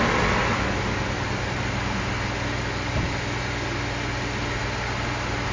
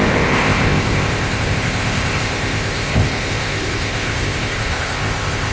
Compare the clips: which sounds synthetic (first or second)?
second